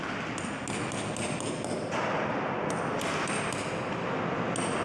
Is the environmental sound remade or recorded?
recorded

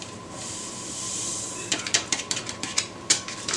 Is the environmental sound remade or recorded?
remade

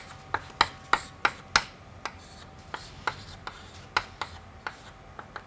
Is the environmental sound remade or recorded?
recorded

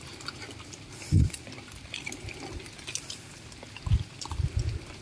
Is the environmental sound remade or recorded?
recorded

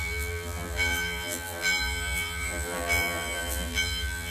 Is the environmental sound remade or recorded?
remade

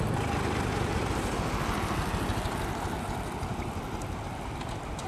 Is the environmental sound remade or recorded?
recorded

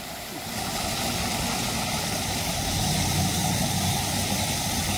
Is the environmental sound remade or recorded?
recorded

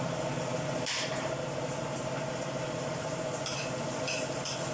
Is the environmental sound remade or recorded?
remade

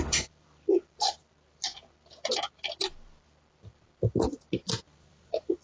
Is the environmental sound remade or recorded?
remade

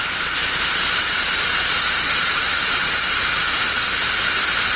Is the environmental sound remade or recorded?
remade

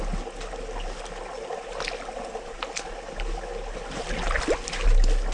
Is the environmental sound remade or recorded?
recorded